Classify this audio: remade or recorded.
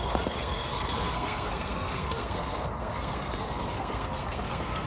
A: remade